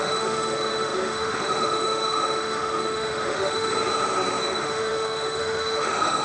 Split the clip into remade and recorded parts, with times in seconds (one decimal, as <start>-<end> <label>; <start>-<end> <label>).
0.0-3.7 remade; 3.7-4.4 recorded; 4.4-6.2 remade